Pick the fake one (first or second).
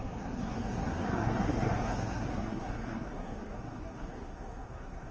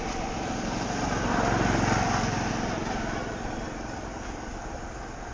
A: first